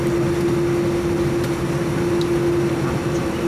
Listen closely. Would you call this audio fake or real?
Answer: real